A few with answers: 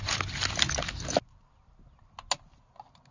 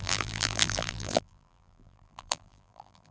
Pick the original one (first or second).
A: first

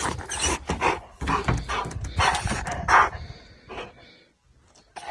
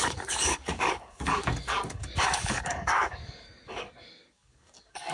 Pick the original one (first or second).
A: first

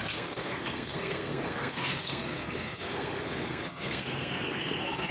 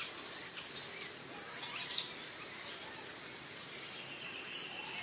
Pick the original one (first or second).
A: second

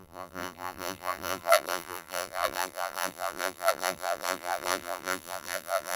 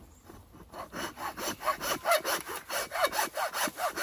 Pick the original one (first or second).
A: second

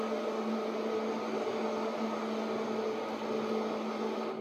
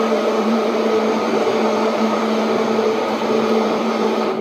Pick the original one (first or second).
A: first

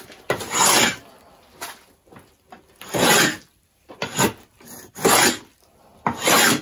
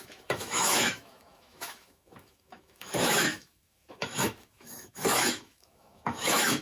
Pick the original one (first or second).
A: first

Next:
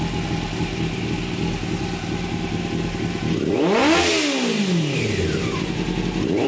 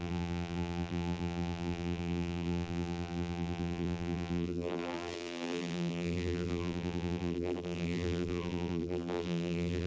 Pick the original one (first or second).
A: first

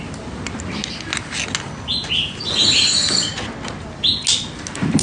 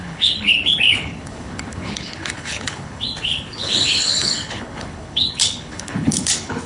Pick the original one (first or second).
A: first